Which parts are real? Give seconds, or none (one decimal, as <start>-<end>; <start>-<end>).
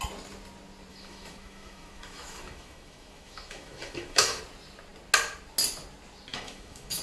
0.0-0.9; 4.4-6.3